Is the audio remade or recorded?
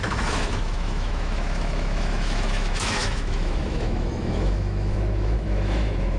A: remade